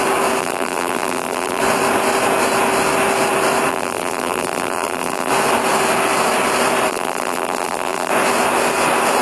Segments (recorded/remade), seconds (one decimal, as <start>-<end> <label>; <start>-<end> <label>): 0.0-0.4 recorded; 0.4-1.6 remade; 1.6-3.7 recorded; 3.7-5.3 remade; 5.3-6.9 recorded; 6.9-8.1 remade; 8.1-9.2 recorded